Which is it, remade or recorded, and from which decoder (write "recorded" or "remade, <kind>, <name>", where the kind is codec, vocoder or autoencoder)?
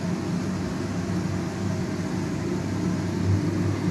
recorded